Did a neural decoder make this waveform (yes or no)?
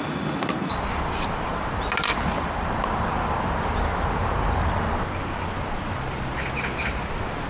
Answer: no